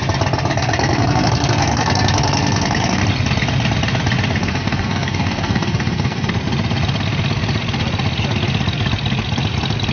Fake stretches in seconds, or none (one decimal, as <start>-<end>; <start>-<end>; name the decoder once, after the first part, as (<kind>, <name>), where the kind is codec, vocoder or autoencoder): 0.5-3.0 (codec, SNAC); 4.4-6.3